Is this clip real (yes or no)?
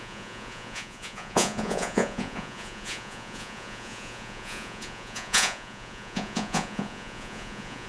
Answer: no